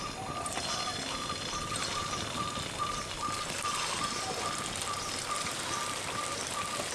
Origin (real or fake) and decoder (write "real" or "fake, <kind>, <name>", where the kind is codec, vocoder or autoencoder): real